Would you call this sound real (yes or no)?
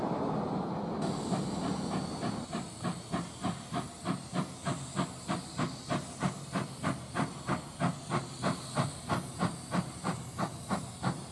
yes